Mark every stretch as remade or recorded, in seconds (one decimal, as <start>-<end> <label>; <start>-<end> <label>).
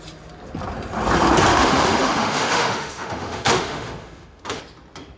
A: 0.0-1.5 recorded; 1.5-4.6 remade; 4.6-5.2 recorded